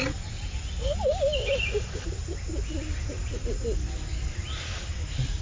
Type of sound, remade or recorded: recorded